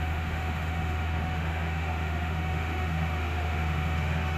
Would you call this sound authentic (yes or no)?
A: no